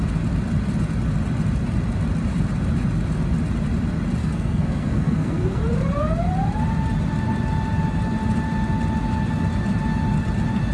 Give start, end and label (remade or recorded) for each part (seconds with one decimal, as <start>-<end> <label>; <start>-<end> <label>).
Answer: 0.0-4.2 recorded; 4.2-5.6 remade; 5.6-10.7 recorded

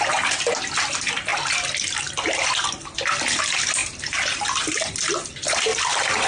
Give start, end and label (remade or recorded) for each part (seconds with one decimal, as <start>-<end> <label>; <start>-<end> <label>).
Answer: 0.0-3.8 recorded; 3.8-5.1 remade; 5.1-6.3 recorded

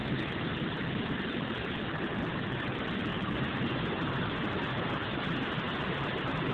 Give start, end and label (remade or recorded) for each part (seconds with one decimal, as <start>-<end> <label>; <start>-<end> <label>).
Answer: 0.0-6.5 recorded

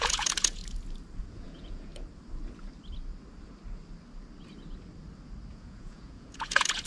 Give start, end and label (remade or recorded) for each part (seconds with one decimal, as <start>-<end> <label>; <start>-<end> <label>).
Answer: 0.0-0.6 remade; 0.6-1.2 recorded; 1.2-1.9 remade; 1.9-5.5 recorded; 5.5-6.9 remade

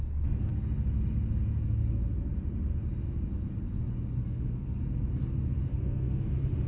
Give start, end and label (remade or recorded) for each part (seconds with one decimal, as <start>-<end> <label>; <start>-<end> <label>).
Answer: 0.0-4.2 recorded; 4.2-4.8 remade; 4.8-5.7 recorded; 5.7-6.3 remade; 6.3-6.7 recorded

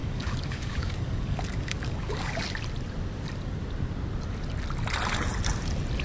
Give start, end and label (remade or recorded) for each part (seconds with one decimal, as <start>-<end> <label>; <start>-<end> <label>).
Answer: 0.0-2.4 remade; 2.4-6.0 recorded

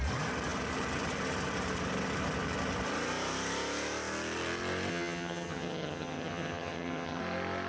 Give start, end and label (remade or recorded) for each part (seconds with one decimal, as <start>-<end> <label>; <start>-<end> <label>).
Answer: 0.0-4.9 recorded; 4.9-7.2 remade; 7.2-7.7 recorded

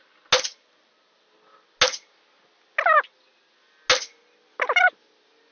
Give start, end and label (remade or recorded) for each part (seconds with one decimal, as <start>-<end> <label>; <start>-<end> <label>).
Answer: 0.0-5.5 recorded